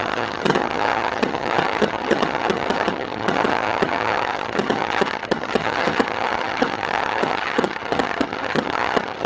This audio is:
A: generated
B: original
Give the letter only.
A